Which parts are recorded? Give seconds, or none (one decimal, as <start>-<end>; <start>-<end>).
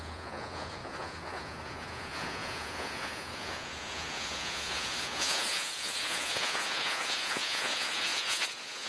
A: none